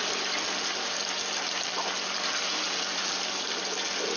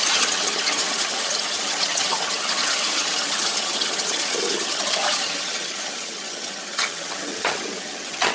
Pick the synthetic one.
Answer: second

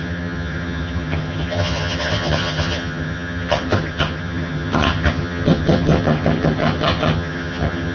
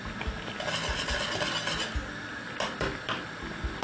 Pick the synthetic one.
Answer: first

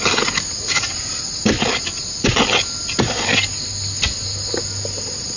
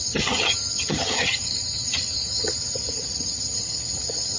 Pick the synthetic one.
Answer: second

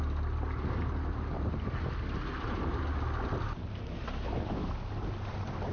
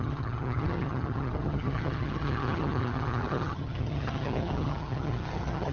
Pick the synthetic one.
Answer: second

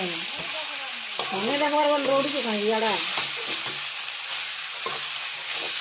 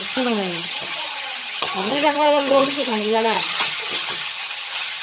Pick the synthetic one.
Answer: second